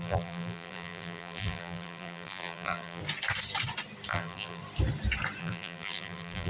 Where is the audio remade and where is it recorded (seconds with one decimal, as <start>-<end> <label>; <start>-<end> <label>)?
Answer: 0.0-3.0 remade; 3.0-4.1 recorded; 4.1-4.6 remade; 4.6-5.4 recorded; 5.4-6.5 remade